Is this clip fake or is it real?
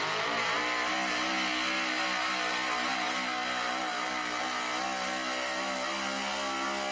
real